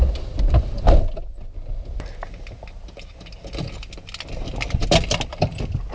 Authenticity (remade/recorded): recorded